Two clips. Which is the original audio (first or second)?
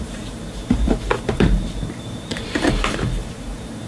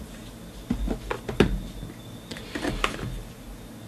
second